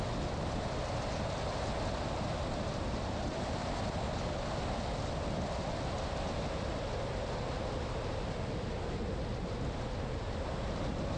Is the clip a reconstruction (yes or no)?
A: no